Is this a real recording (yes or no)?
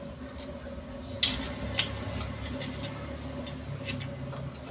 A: yes